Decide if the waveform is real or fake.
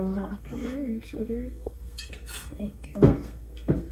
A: fake